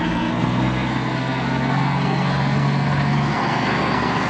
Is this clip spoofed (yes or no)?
yes